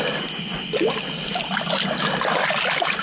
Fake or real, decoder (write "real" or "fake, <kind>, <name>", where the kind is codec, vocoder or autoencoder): real